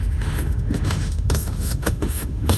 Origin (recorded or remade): remade